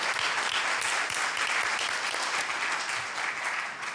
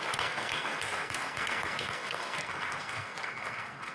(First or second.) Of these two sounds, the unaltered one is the first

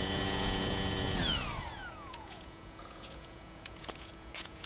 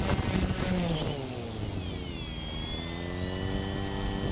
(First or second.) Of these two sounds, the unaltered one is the second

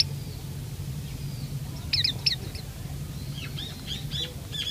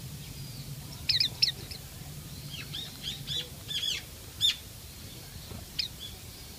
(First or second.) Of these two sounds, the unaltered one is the first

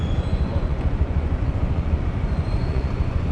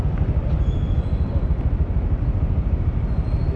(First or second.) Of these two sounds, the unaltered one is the second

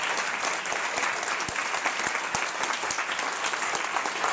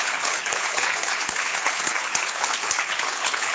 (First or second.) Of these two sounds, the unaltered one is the first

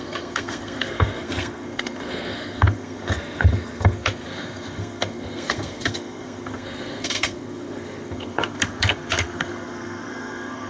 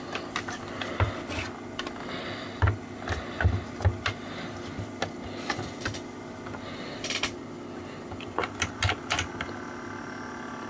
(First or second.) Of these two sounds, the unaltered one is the second